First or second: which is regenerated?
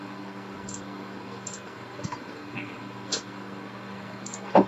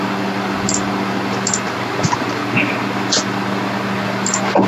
first